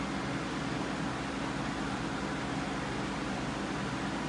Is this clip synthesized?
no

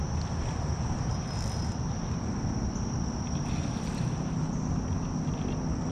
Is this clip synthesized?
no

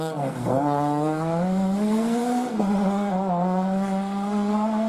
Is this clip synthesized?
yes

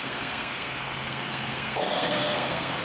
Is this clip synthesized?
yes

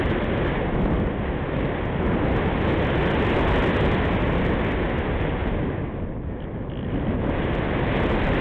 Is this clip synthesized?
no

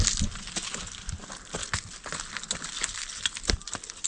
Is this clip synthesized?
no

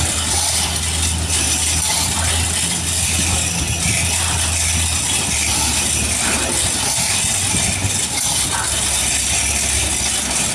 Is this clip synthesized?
no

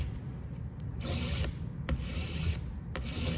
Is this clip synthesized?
no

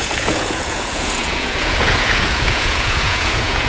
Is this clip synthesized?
yes